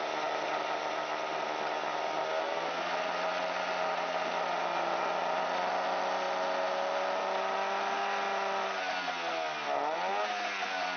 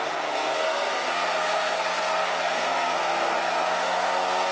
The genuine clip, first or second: first